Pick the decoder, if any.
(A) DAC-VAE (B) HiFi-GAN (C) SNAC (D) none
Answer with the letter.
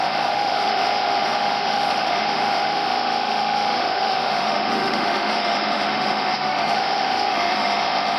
A